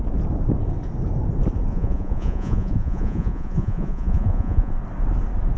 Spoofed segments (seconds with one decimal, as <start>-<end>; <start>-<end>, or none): 1.7-4.7